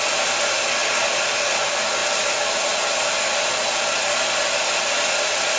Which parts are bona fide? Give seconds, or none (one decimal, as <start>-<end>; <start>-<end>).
0.0-5.6